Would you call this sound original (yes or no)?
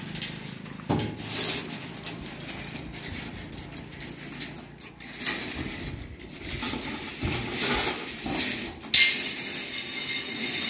yes